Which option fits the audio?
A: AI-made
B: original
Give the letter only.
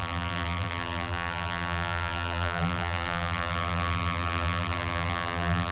A